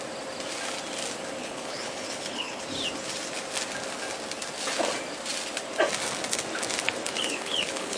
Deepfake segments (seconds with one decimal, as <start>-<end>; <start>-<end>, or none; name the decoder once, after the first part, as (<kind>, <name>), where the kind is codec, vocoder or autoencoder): 1.4-2.6 (codec, HILCodec); 7.0-8.0